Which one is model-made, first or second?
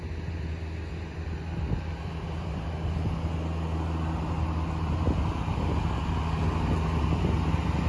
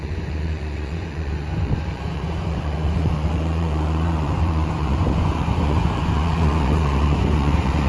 second